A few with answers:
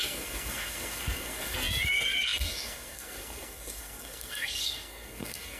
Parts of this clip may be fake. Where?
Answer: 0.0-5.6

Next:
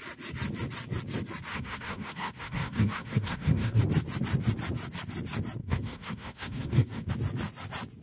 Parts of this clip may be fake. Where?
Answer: 1.5-3.8; 5.6-7.1

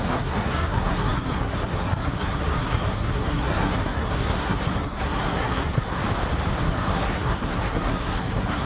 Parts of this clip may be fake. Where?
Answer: 0.0-6.0; 6.6-8.7